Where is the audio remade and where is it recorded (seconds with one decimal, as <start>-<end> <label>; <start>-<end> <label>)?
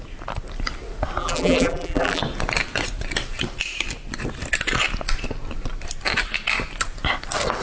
0.0-1.2 recorded; 1.2-2.2 remade; 2.2-7.6 recorded